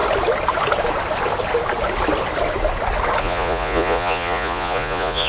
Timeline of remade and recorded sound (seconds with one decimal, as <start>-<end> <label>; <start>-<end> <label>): 0.0-3.2 recorded; 3.2-5.3 remade